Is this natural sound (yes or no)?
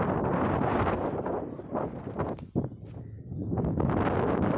yes